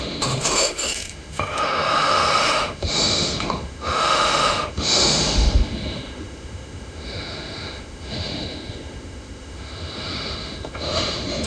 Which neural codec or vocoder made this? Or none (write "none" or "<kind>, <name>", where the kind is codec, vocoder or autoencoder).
autoencoder, DAC-VAE